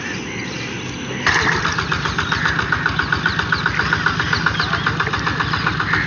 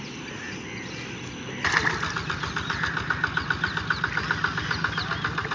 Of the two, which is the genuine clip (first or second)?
second